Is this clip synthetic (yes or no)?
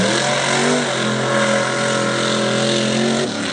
no